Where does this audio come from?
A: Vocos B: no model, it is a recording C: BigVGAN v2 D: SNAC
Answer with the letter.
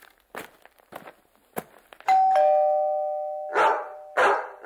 B